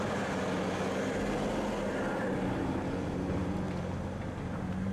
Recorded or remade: recorded